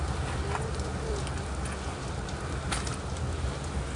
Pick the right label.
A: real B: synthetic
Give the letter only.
A